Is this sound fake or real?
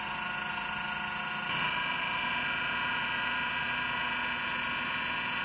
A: real